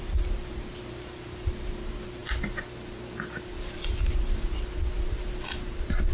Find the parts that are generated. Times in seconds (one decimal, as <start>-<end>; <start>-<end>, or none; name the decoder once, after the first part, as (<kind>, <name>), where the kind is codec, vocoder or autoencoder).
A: none